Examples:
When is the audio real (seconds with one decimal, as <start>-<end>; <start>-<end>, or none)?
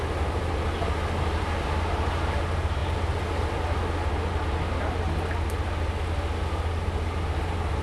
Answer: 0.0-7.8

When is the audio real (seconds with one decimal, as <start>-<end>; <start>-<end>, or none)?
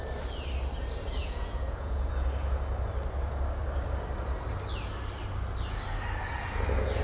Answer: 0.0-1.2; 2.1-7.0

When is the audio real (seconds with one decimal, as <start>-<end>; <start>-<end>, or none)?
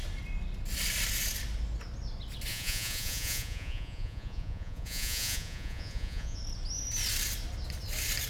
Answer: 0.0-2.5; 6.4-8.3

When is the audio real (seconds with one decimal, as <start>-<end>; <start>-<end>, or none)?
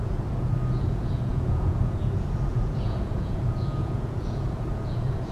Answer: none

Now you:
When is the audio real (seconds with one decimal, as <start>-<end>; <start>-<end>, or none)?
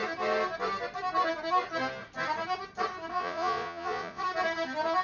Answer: 0.0-3.1; 4.2-5.0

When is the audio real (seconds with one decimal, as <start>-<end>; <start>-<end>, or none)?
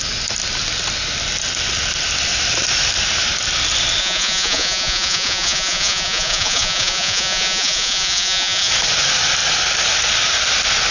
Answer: 0.0-4.0; 8.7-10.9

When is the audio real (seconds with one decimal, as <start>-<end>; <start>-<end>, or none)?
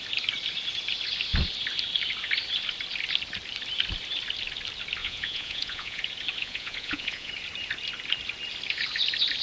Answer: 0.0-5.0; 6.0-6.4; 7.3-9.4